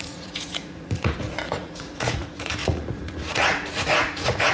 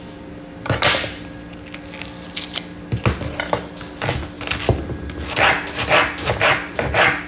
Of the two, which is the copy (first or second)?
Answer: first